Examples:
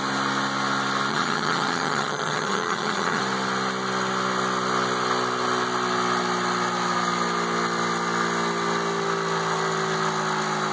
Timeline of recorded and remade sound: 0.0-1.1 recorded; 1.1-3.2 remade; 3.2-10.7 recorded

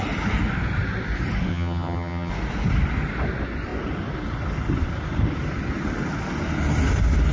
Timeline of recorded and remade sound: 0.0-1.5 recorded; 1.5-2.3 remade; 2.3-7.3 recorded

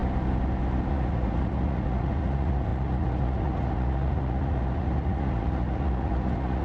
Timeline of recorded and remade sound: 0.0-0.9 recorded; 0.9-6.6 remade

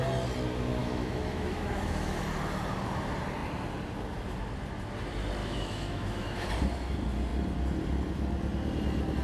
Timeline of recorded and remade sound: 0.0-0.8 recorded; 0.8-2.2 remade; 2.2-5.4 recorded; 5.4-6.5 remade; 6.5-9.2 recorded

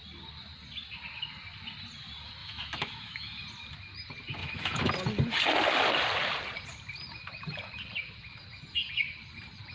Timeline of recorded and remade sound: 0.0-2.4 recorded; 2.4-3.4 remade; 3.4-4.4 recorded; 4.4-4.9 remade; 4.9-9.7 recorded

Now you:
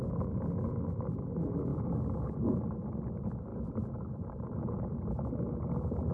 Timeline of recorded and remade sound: 0.0-3.5 recorded; 3.5-5.2 remade; 5.2-6.1 recorded